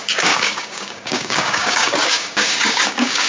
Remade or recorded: remade